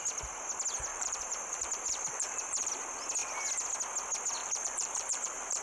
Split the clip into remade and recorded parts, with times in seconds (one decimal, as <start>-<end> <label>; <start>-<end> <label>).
0.0-0.9 recorded; 0.9-2.8 remade; 2.8-4.4 recorded; 4.4-5.6 remade